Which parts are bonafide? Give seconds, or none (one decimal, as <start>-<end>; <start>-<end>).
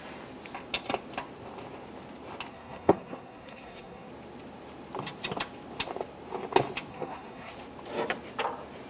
0.0-2.5; 4.1-6.9; 7.5-8.9